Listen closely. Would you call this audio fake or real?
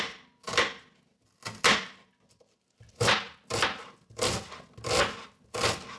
real